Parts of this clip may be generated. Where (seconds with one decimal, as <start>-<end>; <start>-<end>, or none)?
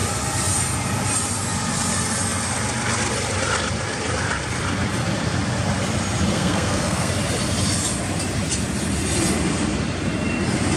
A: 6.3-7.1